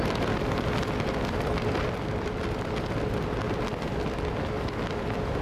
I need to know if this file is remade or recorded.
recorded